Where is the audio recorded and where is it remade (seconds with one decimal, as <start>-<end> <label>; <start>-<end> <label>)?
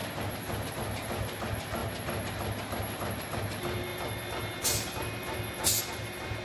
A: 0.0-6.4 recorded